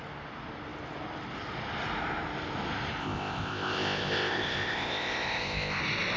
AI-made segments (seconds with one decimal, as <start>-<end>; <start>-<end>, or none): 3.0-5.8